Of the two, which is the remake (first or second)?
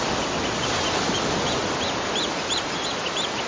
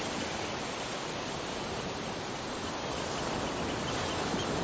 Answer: second